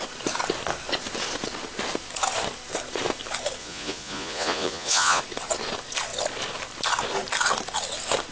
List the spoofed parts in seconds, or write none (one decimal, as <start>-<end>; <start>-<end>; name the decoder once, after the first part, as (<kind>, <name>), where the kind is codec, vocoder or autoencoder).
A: 3.6-5.2 (vocoder, Vocos)